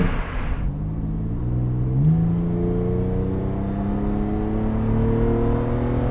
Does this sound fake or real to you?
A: real